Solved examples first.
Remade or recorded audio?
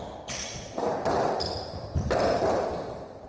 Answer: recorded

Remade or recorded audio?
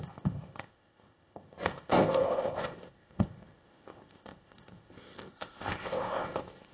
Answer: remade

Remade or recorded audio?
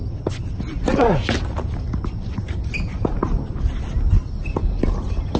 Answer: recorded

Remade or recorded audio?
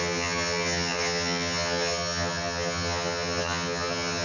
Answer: remade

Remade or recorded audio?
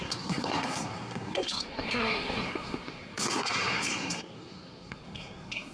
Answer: remade